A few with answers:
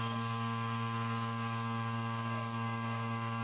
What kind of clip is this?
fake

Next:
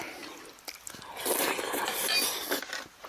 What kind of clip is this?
real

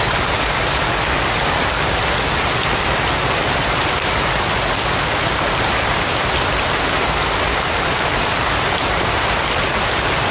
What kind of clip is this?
real